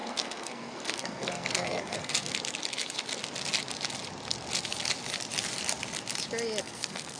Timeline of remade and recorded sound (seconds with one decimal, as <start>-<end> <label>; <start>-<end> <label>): 0.0-2.3 remade; 2.3-6.6 recorded; 6.6-7.2 remade